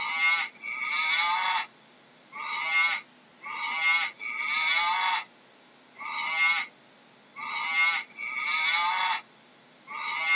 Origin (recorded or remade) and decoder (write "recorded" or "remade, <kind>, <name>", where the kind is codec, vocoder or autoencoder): recorded